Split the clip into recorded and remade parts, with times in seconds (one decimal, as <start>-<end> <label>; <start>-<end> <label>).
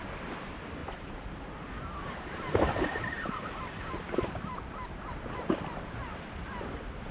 0.0-0.8 recorded; 0.8-5.1 remade; 5.1-7.1 recorded